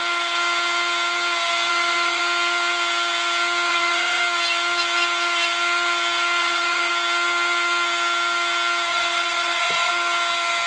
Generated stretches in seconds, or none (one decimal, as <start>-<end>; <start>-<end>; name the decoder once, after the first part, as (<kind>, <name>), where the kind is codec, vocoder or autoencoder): 1.7-2.2 (vocoder, WaveNeXt); 3.7-4.2; 6.4-6.9; 8.9-9.9